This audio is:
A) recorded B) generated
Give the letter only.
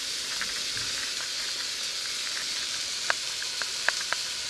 A